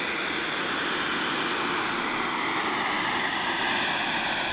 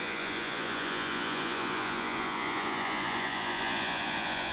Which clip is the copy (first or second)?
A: second